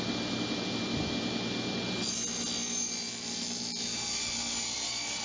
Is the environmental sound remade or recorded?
recorded